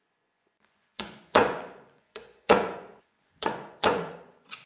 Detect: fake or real fake